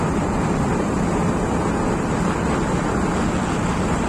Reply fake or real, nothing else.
real